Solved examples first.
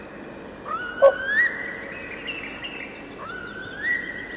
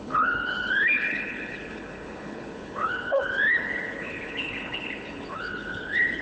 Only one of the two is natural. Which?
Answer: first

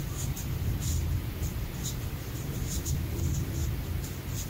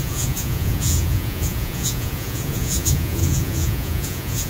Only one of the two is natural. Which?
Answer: first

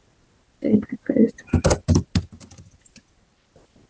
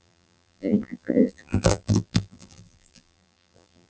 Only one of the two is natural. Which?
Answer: first